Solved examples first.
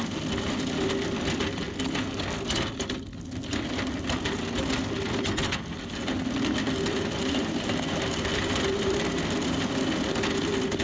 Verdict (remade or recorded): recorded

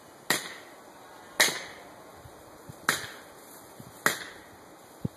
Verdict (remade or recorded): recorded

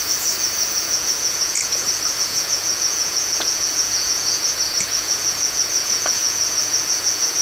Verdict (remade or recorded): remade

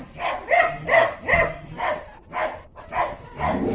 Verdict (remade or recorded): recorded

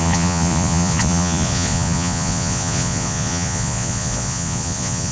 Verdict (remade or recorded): remade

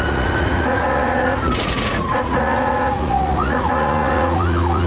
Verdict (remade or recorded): remade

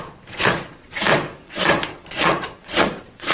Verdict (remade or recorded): remade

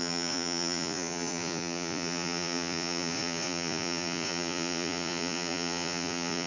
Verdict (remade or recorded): remade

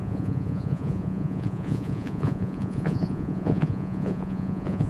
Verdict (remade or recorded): remade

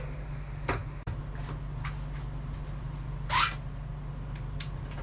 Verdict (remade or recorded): recorded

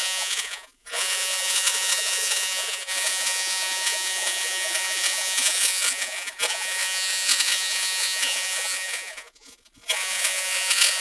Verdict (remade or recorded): remade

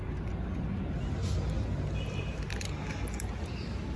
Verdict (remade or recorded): recorded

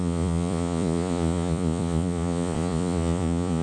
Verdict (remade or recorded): remade